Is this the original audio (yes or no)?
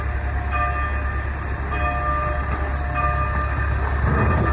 yes